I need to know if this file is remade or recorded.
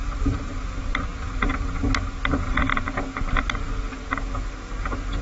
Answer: recorded